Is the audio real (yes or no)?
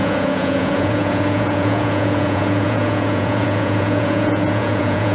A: no